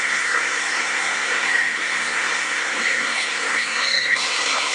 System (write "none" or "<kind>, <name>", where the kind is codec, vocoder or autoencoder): codec, SNAC